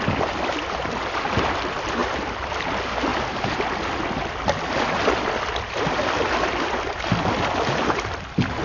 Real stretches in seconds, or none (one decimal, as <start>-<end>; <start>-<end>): 0.0-8.6